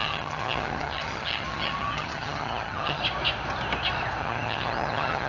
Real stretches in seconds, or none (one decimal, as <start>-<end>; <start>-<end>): 3.0-4.2